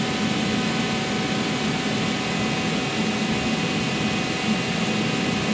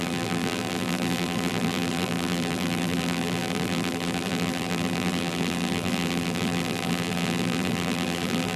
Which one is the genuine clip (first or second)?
first